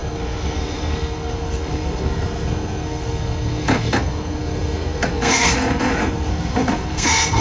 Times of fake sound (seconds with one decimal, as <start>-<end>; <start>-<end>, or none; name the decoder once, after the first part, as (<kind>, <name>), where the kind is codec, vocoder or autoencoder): 0.0-7.4 (codec, SNAC)